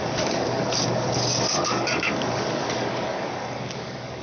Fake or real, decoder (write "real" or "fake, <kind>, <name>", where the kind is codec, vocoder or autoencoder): fake, codec, DAC